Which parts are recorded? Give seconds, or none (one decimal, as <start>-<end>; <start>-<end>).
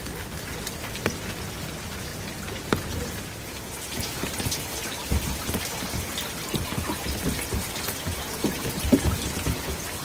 0.0-10.0